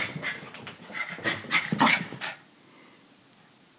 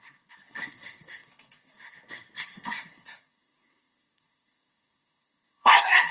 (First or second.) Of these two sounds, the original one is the first